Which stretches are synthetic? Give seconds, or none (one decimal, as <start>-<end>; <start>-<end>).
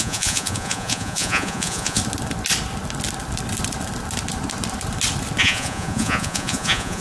0.0-2.0; 5.4-7.0